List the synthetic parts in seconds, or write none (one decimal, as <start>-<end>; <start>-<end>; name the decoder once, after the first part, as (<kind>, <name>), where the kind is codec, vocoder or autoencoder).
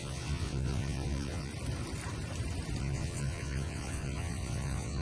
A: 0.0-1.5 (vocoder, WaveNeXt); 2.8-5.0